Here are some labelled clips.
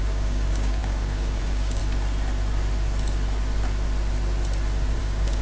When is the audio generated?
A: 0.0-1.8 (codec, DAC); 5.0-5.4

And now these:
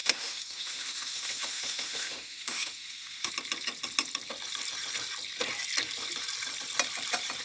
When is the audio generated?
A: 0.0-3.3 (autoencoder, DAC-VAE)

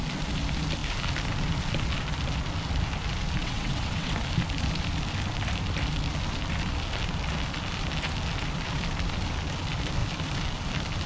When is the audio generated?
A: 3.4-4.1 (vocoder, WaveNeXt)

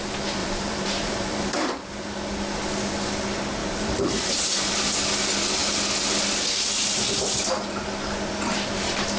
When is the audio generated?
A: 0.4-1.9 (vocoder, BigVGAN v2); 3.6-4.7

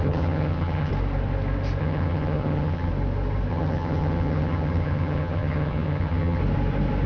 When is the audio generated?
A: 0.0-0.9 (vocoder, HiFi-GAN); 1.8-2.9; 3.5-6.4

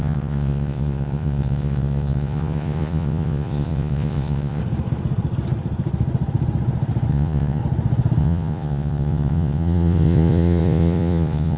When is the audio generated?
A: 0.0-4.6 (vocoder, Vocos); 7.1-7.6; 8.2-11.6

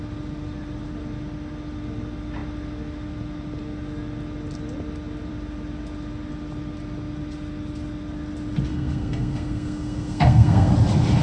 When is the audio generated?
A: 8.7-10.7 (codec, SNAC)